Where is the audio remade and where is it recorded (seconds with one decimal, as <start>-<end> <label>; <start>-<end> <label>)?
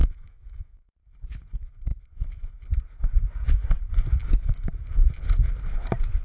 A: 0.0-0.9 remade; 0.9-4.2 recorded; 4.2-4.7 remade; 4.7-6.2 recorded